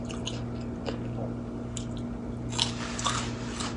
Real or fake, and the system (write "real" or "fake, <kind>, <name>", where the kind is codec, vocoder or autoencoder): real